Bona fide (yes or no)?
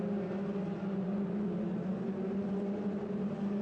yes